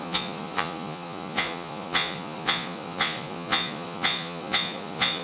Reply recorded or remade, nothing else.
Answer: remade